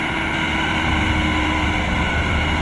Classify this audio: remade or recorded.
recorded